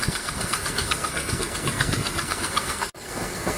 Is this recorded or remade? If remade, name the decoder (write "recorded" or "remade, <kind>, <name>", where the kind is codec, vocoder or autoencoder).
remade, codec, SNAC